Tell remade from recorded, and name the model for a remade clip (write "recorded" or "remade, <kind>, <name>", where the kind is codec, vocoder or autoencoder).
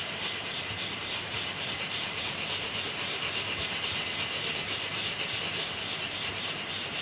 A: recorded